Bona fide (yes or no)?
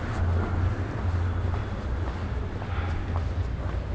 yes